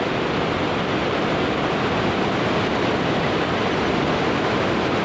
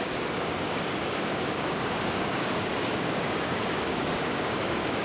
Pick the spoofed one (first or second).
second